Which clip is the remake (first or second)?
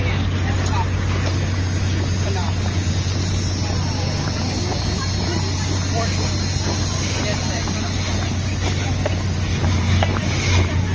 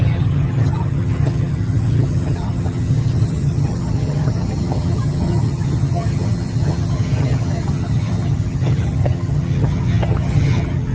second